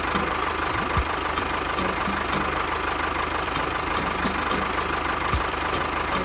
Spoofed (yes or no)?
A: no